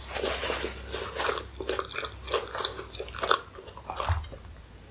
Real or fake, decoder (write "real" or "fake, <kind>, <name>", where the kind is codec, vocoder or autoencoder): real